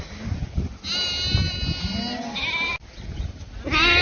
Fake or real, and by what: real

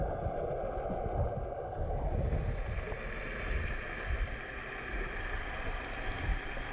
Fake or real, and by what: real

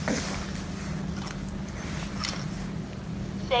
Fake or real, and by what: real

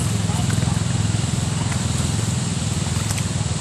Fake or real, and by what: real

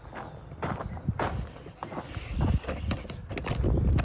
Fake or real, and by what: real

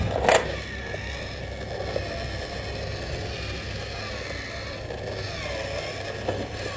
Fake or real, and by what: real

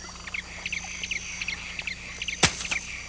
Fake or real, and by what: real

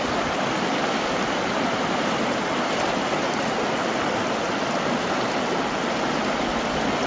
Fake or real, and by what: real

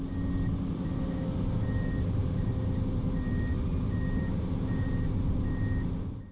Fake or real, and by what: real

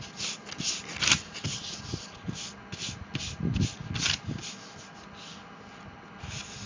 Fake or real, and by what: real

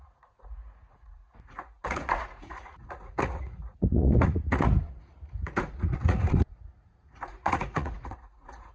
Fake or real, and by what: fake, vocoder, Vocos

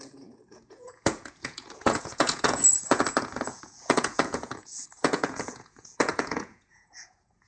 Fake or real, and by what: fake, vocoder, Vocos